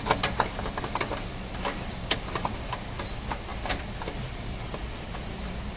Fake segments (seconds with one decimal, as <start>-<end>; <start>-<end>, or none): none